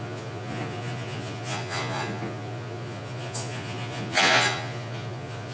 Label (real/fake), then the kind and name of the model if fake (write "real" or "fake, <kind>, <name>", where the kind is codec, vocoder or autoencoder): fake, vocoder, Vocos